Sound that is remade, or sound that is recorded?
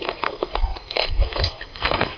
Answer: remade